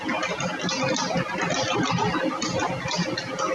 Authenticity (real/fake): real